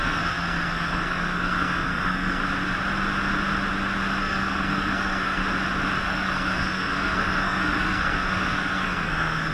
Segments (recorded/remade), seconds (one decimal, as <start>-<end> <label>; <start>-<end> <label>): 0.0-2.4 remade; 2.4-4.2 recorded; 4.2-5.4 remade; 5.4-6.0 recorded; 6.0-9.5 remade